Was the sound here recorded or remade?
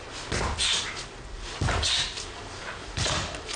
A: recorded